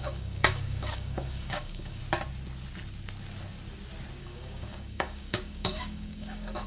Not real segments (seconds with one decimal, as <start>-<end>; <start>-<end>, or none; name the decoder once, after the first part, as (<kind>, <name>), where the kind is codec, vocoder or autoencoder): 0.0-2.0 (codec, DAC); 4.2-6.7

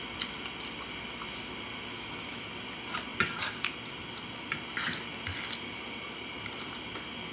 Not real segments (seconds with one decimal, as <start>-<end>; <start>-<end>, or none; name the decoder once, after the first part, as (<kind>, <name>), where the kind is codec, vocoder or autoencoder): 1.9-2.5 (autoencoder, DAC-VAE)

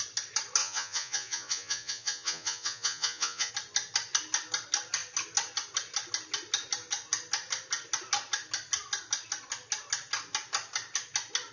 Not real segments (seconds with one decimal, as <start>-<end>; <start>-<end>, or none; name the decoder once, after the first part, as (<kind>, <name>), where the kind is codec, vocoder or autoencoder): 0.6-3.5 (vocoder, Vocos)

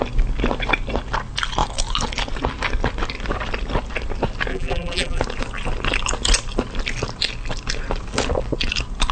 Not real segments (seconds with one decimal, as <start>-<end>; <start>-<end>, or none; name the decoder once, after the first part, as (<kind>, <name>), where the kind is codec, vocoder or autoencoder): 4.5-5.2 (vocoder, BigVGAN v2)

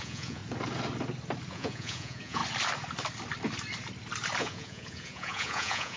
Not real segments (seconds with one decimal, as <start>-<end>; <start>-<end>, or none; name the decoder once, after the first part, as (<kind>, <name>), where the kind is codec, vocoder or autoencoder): 0.0-0.4 (vocoder, Vocos); 1.5-2.4; 4.4-6.0